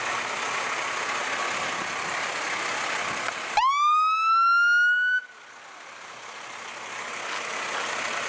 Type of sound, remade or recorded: recorded